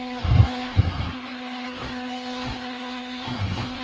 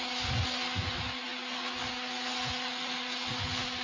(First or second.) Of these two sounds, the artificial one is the first